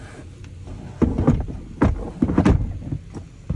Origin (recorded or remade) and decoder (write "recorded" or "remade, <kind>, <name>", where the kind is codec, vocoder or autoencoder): recorded